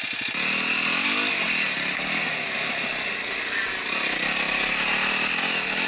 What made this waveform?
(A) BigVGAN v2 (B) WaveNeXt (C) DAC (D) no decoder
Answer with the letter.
D